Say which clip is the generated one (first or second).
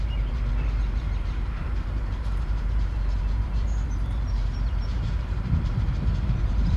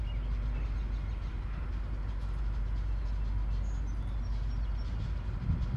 first